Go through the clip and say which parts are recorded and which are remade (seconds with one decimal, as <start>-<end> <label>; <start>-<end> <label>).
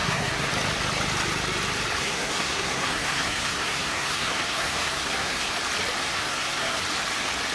0.0-0.5 remade; 0.5-2.0 recorded; 2.0-5.5 remade; 5.5-6.0 recorded; 6.0-6.8 remade; 6.8-7.5 recorded